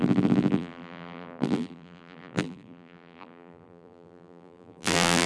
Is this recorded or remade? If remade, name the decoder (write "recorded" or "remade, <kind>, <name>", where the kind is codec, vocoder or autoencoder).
remade, vocoder, BigVGAN v2